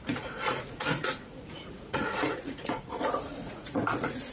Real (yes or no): no